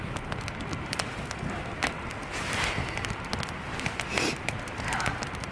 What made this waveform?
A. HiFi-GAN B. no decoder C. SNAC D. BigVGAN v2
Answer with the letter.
B